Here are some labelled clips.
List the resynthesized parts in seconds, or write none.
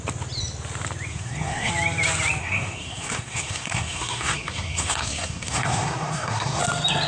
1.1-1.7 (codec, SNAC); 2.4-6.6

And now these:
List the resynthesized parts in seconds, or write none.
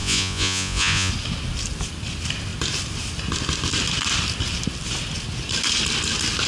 0.0-1.1 (vocoder, Vocos)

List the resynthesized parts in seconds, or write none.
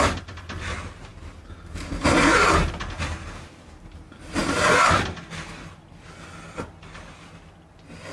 none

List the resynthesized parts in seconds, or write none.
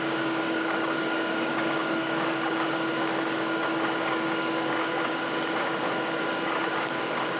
0.0-7.4 (codec, DAC)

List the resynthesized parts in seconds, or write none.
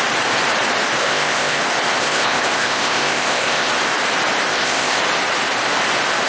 1.0-1.6 (codec, ZipCodec); 2.0-3.7; 4.5-5.0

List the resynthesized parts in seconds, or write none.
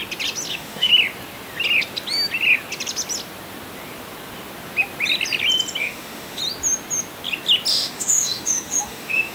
0.5-0.9 (autoencoder, DAC-VAE); 5.8-6.4; 7.7-9.3